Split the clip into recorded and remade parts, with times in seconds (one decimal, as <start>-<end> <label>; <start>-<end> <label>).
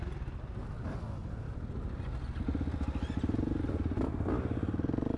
0.0-5.2 recorded